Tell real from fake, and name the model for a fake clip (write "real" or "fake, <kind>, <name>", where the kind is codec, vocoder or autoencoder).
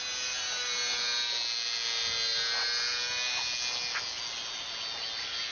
real